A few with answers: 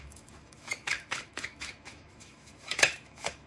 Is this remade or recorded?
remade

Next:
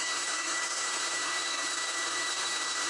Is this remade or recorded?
remade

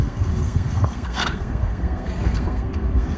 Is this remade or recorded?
remade